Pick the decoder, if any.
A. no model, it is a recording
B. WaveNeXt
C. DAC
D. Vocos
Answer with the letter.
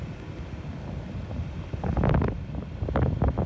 A